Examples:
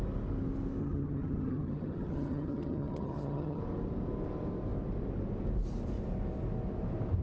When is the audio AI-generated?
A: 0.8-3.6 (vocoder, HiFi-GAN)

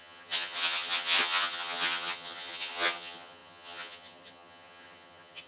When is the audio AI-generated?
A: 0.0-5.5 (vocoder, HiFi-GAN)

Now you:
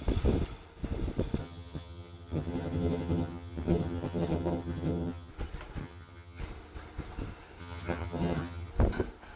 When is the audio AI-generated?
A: 1.4-5.3 (vocoder, HiFi-GAN); 5.8-6.4; 7.6-8.7